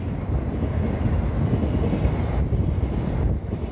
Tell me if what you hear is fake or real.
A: real